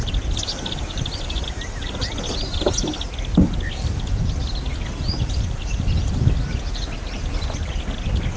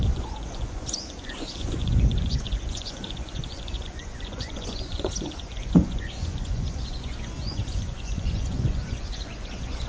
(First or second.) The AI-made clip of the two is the second